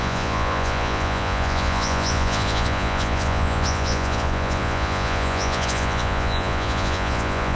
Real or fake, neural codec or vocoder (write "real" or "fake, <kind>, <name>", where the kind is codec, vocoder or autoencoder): fake, vocoder, Vocos